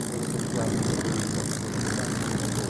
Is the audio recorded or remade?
remade